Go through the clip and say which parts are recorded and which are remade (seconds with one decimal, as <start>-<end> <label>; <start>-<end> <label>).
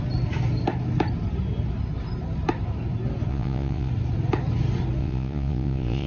0.0-3.3 recorded; 3.3-3.9 remade; 3.9-5.0 recorded; 5.0-6.1 remade